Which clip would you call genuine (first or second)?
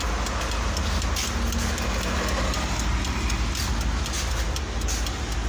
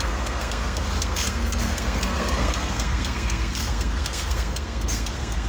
first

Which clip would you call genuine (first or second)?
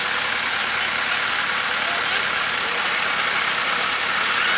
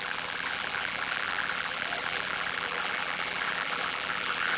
first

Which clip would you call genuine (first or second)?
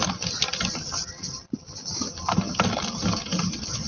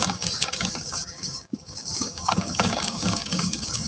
first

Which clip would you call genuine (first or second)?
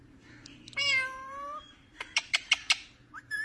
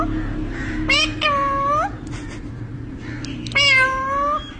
second